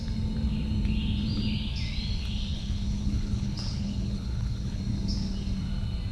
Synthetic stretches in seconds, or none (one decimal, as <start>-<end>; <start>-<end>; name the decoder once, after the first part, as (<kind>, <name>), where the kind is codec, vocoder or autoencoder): 2.5-4.8 (codec, HILCodec)

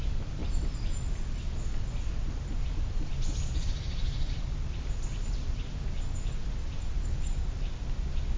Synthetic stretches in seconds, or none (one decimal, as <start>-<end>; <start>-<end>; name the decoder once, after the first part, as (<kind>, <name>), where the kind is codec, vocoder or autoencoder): none